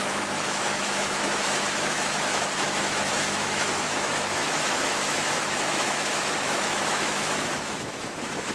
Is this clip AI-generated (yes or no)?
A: yes